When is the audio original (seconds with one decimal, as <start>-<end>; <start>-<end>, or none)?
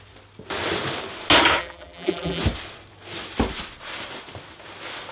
0.0-1.6; 2.4-5.1